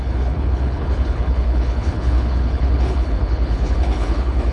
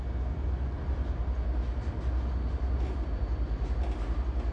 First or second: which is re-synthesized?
first